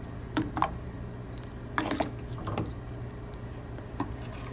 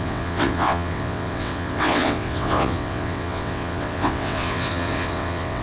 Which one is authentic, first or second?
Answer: first